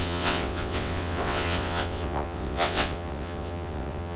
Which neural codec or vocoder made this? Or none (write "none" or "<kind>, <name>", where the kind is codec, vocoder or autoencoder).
vocoder, WaveNeXt